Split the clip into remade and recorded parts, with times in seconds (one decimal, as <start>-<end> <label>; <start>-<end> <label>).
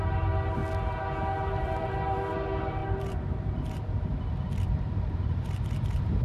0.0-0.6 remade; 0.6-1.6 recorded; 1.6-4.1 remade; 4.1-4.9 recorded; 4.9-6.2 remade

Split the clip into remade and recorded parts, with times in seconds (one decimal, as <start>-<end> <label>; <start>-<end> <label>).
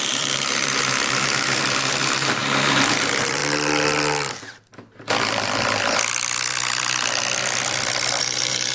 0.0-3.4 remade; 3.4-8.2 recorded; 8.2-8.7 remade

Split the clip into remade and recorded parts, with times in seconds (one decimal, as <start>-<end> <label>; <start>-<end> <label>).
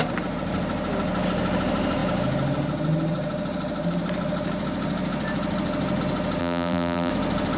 0.0-6.4 recorded; 6.4-7.1 remade; 7.1-7.6 recorded